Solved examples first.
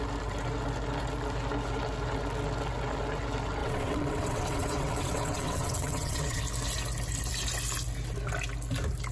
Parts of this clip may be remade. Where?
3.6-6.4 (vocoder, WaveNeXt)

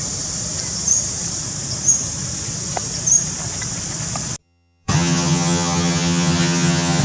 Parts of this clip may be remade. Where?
4.4-7.0 (vocoder, HiFi-GAN)

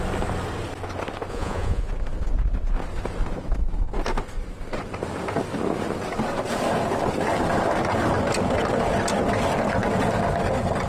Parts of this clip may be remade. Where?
1.3-1.9 (vocoder, Vocos)